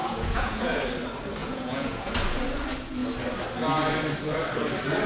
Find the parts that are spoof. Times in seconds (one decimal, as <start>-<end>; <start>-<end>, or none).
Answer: 0.0-0.8; 1.4-2.1